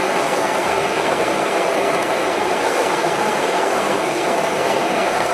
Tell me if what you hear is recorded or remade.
remade